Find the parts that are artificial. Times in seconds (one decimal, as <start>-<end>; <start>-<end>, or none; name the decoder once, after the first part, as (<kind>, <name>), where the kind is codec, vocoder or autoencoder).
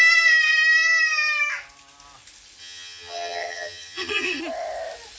2.6-4.4 (vocoder, HiFi-GAN)